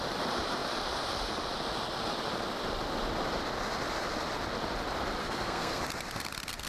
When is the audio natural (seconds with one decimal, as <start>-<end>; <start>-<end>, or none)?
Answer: 0.0-5.2; 5.8-6.7